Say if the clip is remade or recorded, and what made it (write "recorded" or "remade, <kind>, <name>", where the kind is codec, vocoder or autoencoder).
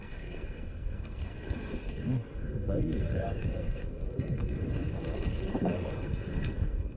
remade, codec, SNAC